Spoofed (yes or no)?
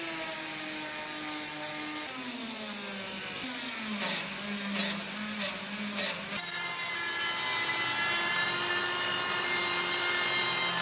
no